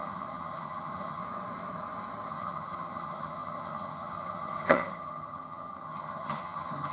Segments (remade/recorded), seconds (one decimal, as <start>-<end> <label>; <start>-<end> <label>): 0.0-1.2 remade; 1.2-2.3 recorded; 2.3-6.9 remade